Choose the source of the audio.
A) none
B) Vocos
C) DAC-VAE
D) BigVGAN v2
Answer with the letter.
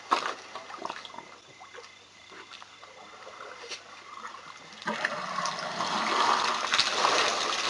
A